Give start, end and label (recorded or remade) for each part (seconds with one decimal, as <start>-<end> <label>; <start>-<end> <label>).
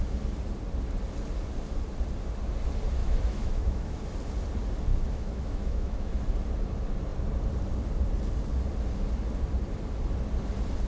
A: 0.0-3.0 recorded; 3.0-4.0 remade; 4.0-4.9 recorded; 4.9-6.2 remade; 6.2-10.9 recorded